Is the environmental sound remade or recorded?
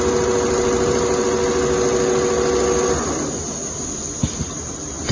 recorded